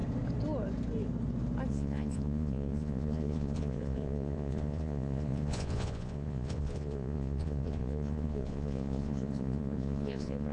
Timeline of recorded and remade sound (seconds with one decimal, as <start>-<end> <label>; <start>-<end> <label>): 0.0-1.7 recorded; 1.7-10.5 remade